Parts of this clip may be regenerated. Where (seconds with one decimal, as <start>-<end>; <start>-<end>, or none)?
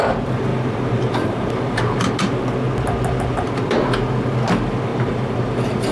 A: 0.5-2.1; 4.9-5.9